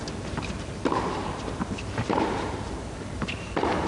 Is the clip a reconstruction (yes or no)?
yes